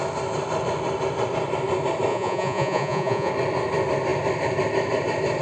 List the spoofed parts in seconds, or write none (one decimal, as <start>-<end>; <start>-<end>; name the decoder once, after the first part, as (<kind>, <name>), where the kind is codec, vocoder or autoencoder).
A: 2.1-3.3 (vocoder, Vocos)